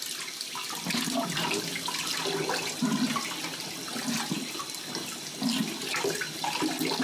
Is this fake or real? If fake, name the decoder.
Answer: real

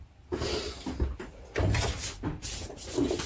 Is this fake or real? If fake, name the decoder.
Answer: real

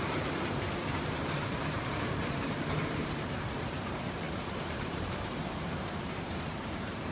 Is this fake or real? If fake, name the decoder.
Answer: fake, vocoder, BigVGAN v2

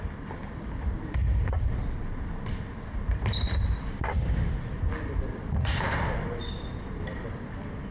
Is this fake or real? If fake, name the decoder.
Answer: fake, vocoder, BigVGAN v2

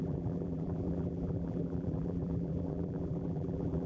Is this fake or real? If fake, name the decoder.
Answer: fake, vocoder, BigVGAN v2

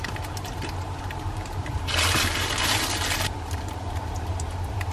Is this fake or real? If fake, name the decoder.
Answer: fake, vocoder, BigVGAN v2